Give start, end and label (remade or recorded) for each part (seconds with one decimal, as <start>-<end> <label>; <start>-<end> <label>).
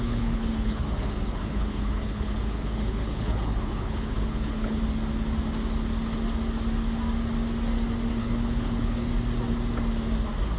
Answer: 0.0-4.8 remade; 4.8-8.2 recorded; 8.2-9.1 remade; 9.1-10.6 recorded